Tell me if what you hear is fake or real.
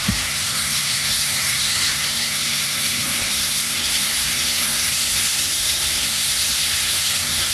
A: fake